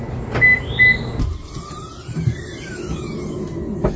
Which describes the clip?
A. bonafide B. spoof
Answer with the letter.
A